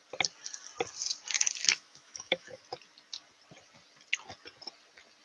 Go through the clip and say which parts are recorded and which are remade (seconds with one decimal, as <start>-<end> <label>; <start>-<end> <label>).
0.0-1.6 recorded; 1.6-2.6 remade; 2.6-5.2 recorded